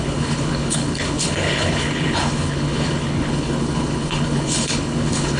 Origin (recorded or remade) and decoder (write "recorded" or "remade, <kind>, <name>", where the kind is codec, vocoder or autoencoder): remade, codec, HILCodec